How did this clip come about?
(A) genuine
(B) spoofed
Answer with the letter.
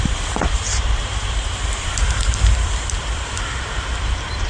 B